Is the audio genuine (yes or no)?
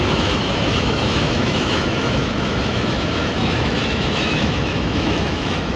no